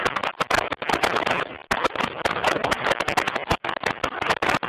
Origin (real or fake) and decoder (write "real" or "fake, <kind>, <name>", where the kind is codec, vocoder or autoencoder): real